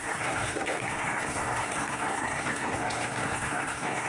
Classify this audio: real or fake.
fake